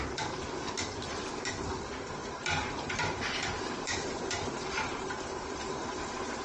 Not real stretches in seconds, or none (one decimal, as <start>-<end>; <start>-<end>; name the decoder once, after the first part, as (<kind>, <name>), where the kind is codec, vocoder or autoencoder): 2.2-6.0 (vocoder, BigVGAN v2)